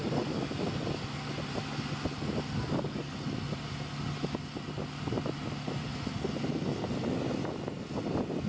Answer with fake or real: real